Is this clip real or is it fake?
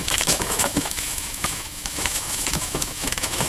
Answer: fake